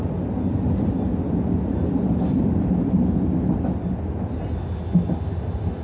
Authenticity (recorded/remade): recorded